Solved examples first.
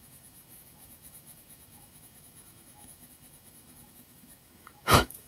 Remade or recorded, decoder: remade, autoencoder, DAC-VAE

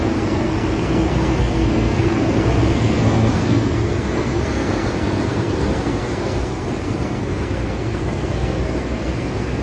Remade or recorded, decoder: remade, codec, SNAC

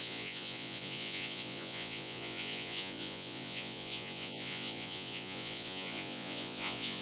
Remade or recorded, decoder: remade, vocoder, Vocos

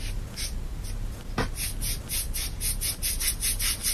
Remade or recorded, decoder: recorded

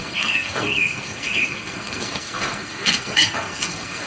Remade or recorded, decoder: remade, codec, SNAC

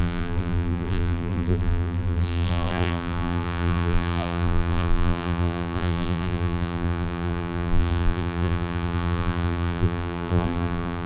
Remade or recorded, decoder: remade, vocoder, BigVGAN v2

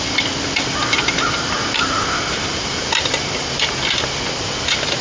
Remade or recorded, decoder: recorded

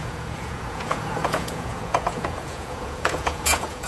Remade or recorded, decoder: remade, vocoder, Vocos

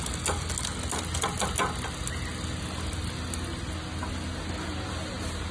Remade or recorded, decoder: recorded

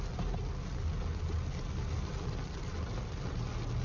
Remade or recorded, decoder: recorded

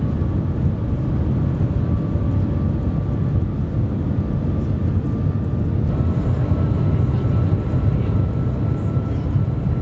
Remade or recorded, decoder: recorded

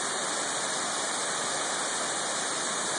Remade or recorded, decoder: recorded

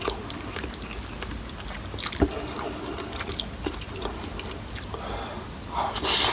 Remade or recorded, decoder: recorded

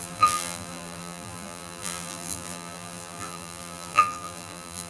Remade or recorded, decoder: remade, vocoder, BigVGAN v2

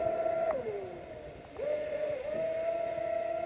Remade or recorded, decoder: recorded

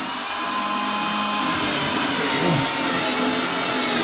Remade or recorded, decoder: recorded